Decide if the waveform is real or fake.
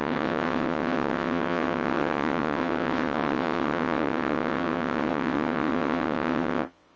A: fake